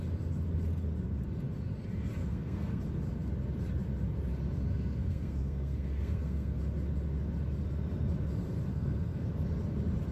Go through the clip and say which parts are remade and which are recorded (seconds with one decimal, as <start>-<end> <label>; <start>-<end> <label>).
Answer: 0.0-2.2 recorded; 2.2-2.8 remade; 2.8-4.7 recorded; 4.7-6.6 remade; 6.6-8.7 recorded; 8.7-9.3 remade; 9.3-10.1 recorded